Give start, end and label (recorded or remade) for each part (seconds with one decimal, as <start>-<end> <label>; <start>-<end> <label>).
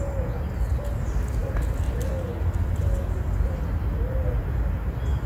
0.0-5.3 recorded